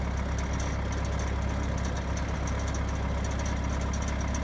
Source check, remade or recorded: recorded